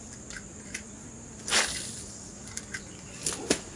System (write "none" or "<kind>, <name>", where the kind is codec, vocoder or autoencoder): none